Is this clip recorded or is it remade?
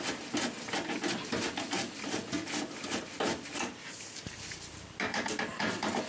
recorded